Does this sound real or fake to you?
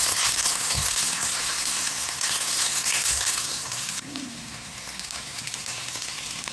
fake